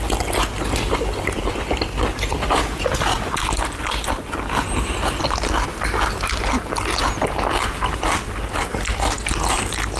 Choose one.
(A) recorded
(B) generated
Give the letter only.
A